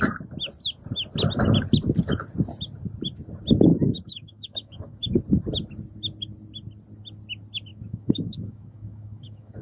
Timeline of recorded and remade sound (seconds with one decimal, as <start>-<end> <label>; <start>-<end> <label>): 0.0-3.7 recorded; 3.7-5.1 remade; 5.1-7.7 recorded; 7.7-9.6 remade